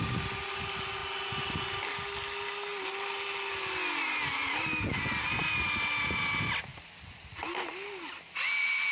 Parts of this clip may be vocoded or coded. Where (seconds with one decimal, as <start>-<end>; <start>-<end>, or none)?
1.0-5.3; 6.7-7.7